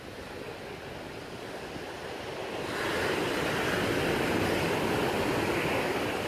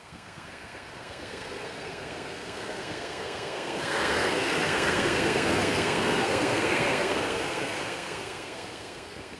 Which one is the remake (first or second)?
second